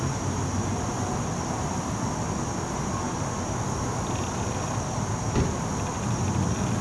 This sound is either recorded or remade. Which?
recorded